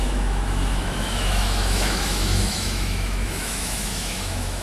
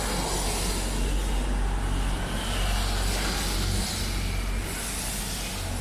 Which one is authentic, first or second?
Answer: second